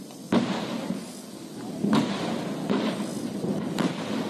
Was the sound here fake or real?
real